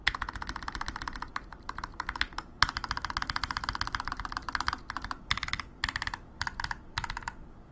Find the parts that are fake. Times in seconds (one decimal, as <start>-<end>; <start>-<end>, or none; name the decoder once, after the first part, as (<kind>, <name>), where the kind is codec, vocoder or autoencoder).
1.3-4.7 (vocoder, BigVGAN v2)